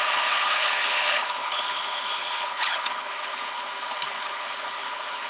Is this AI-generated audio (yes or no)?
yes